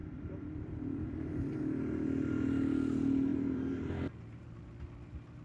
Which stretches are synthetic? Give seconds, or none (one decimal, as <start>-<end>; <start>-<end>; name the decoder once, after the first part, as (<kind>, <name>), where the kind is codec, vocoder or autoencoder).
0.0-1.6 (vocoder, BigVGAN v2); 3.3-3.9